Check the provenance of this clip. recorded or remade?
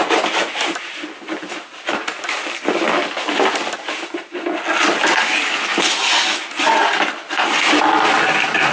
recorded